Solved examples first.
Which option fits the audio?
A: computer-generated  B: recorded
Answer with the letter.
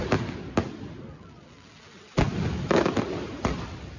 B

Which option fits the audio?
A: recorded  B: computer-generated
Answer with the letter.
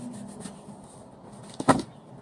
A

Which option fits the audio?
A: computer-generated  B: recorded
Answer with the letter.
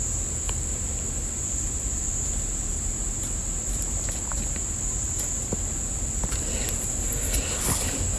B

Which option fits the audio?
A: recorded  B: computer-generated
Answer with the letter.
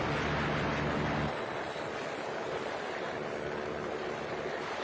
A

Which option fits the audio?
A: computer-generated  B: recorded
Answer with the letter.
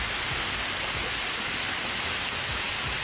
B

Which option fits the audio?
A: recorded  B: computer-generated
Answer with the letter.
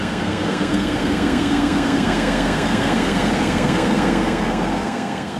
B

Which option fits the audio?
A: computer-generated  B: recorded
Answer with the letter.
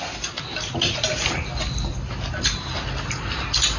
B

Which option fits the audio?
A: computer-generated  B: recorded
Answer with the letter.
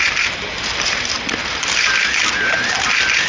B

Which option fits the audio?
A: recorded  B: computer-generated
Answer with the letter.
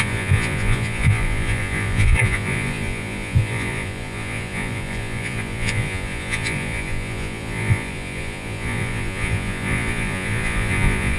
B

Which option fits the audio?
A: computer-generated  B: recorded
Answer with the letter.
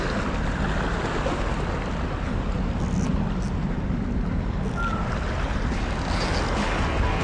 B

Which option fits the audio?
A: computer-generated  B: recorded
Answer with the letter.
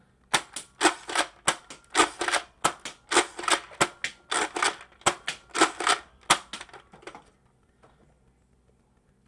B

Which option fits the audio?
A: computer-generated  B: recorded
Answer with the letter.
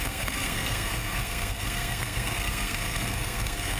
A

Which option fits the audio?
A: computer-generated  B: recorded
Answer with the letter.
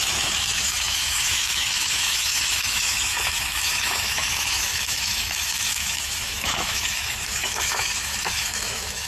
A